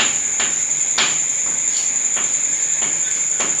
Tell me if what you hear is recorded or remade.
recorded